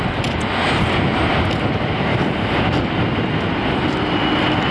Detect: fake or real real